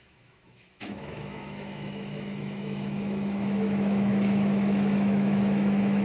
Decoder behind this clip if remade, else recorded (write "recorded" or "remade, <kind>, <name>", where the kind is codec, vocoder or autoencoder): remade, autoencoder, DAC-VAE